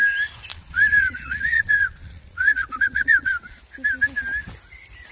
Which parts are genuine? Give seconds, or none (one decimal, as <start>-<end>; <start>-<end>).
0.0-0.5; 3.6-5.1